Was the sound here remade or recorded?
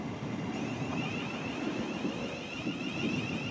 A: recorded